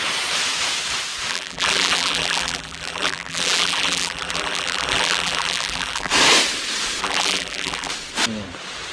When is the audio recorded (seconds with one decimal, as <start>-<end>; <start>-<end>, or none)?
0.0-1.3; 6.1-7.0; 7.9-8.9